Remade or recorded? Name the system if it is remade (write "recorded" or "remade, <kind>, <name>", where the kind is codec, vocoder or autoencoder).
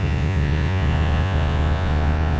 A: remade, vocoder, Vocos